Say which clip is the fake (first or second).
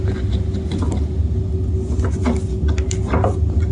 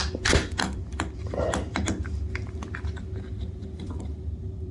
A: second